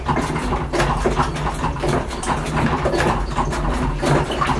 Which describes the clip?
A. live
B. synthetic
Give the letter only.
A